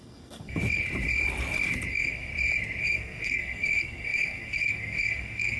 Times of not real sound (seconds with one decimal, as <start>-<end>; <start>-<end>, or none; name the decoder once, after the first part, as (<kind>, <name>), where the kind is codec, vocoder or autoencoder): 0.0-0.6 (codec, SNAC); 1.9-2.3; 2.8-5.6

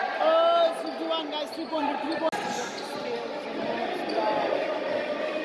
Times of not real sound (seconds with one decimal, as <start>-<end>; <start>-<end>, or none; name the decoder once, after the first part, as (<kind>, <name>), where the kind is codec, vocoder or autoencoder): none

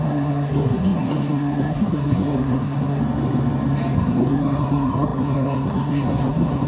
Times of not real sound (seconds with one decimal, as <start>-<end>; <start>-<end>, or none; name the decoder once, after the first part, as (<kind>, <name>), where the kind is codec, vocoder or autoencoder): 0.0-3.0 (codec, SNAC); 3.9-6.7

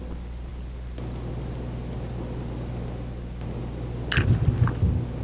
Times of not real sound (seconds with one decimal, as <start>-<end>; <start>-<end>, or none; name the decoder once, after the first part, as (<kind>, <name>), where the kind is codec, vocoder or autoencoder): none

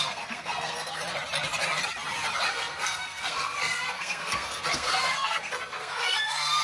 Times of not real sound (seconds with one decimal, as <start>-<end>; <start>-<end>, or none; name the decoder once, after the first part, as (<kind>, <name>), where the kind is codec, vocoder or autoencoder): 0.0-1.0 (codec, SNAC); 2.5-6.6